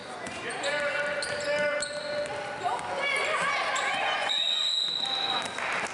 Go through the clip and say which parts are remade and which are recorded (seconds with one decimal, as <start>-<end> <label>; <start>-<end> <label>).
0.0-0.7 remade; 0.7-3.9 recorded; 3.9-4.7 remade; 4.7-5.9 recorded

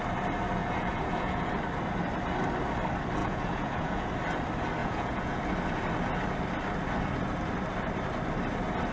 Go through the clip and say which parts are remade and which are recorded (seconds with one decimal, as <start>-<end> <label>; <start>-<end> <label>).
0.0-0.6 recorded; 0.6-1.5 remade; 1.5-3.2 recorded; 3.2-4.1 remade; 4.1-4.8 recorded; 4.8-5.4 remade; 5.4-8.9 recorded

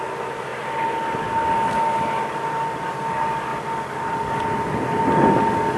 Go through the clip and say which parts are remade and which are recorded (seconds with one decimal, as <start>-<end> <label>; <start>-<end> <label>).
0.0-5.8 recorded

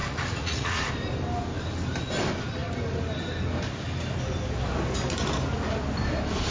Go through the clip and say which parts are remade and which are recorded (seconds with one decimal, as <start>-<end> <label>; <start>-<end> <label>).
0.0-0.9 remade; 0.9-6.5 recorded